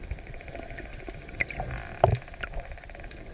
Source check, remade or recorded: recorded